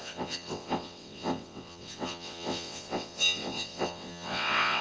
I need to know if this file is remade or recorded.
remade